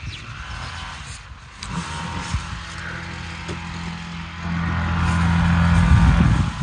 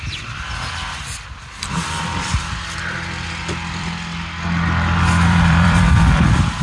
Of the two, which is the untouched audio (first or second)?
first